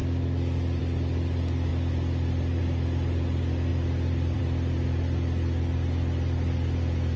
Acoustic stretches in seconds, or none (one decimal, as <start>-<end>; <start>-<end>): 0.0-3.7; 4.4-7.2